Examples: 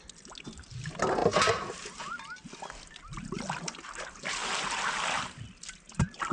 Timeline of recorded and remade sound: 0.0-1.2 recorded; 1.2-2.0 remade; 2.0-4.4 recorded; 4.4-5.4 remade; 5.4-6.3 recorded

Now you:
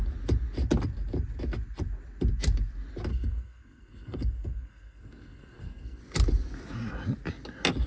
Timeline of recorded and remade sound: 0.0-3.1 recorded; 3.1-6.0 remade; 6.0-7.9 recorded